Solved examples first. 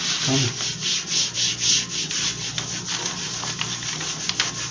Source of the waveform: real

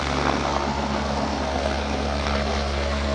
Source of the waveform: fake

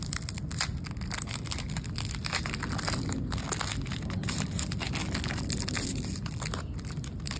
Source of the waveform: real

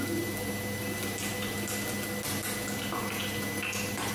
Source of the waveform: real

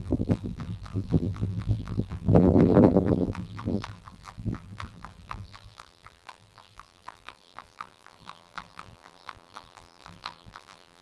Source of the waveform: fake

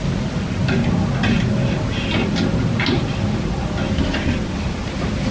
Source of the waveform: real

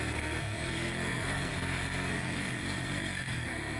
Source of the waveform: fake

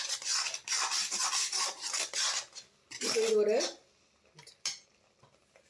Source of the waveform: real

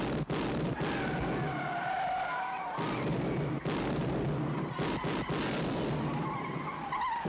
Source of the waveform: real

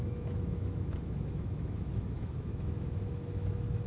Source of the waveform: fake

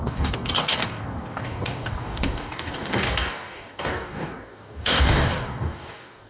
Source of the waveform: fake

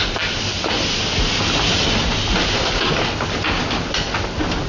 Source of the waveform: real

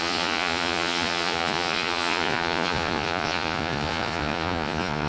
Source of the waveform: fake